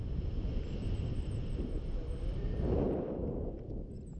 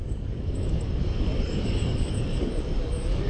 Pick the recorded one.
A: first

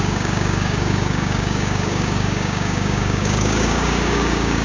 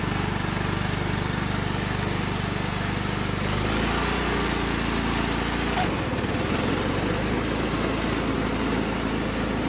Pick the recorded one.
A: second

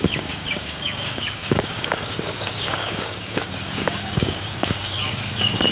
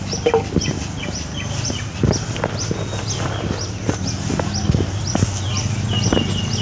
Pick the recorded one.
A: second